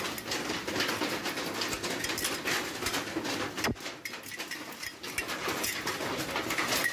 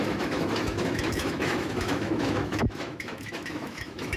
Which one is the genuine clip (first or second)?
first